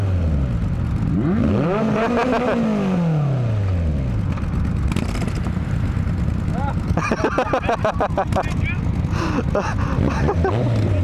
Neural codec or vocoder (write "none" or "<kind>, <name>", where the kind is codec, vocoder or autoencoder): none